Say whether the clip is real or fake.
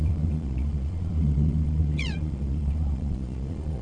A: fake